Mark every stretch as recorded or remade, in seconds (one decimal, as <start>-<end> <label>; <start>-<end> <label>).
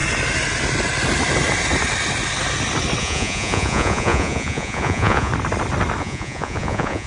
0.0-3.0 recorded; 3.0-5.3 remade; 5.3-6.0 recorded; 6.0-7.1 remade